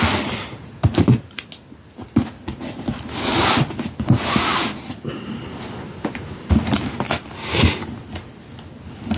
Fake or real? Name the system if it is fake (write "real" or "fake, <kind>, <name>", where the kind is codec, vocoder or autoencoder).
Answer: real